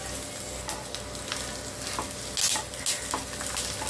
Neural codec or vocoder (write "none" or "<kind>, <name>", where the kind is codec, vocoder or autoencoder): none